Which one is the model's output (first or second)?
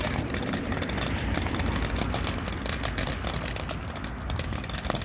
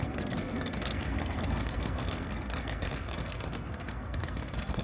second